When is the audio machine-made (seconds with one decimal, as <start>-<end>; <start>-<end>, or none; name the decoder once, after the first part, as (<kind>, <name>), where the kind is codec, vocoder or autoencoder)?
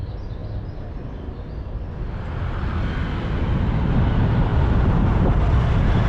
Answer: 0.0-0.4 (vocoder, BigVGAN v2); 3.2-6.1